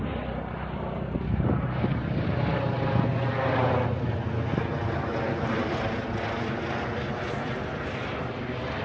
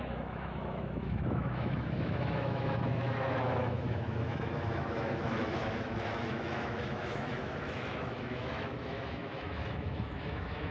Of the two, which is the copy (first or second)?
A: second